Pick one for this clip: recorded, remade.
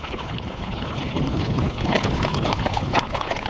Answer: remade